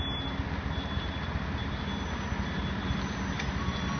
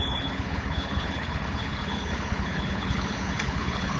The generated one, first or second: second